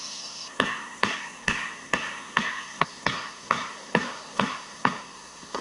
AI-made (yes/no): yes